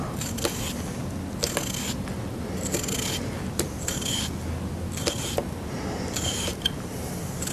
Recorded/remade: recorded